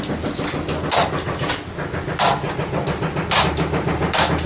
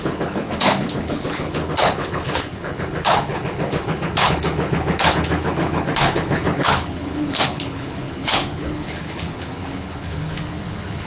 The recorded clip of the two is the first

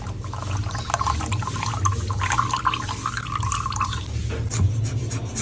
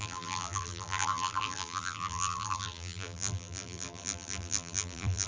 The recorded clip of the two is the first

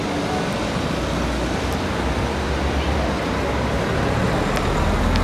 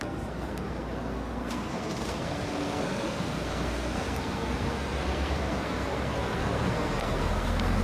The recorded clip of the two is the first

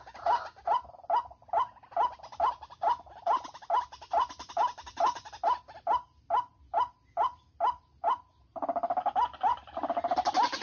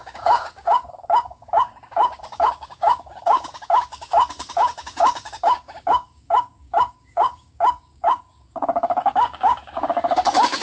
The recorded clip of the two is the first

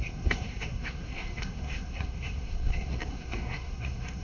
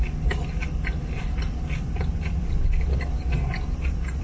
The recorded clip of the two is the second